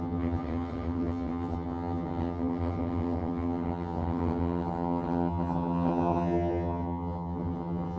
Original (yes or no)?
no